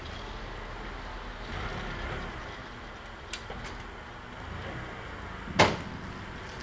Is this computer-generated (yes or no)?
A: no